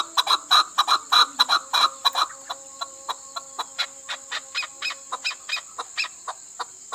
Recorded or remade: recorded